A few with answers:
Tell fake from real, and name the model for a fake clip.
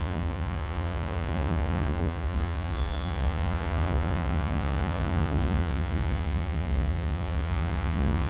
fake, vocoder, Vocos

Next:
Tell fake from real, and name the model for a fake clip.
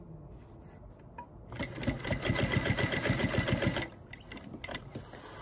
real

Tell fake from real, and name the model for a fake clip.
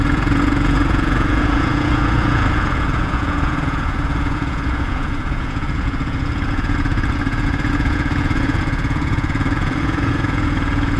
fake, vocoder, Vocos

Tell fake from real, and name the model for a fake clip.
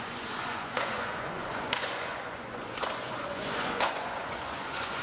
fake, vocoder, Vocos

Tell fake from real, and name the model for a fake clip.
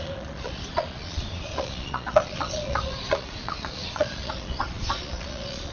fake, vocoder, Vocos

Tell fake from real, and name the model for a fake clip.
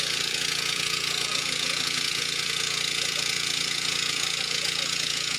fake, vocoder, Vocos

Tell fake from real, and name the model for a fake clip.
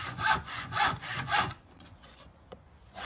fake, vocoder, Vocos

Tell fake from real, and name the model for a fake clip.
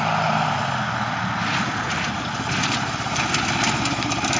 real